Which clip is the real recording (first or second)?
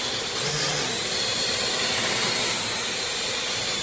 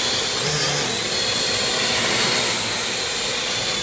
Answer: second